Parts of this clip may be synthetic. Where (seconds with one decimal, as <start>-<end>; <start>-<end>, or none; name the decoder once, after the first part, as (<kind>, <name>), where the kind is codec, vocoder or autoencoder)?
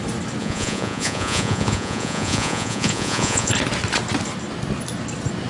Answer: 0.4-3.5 (vocoder, Vocos)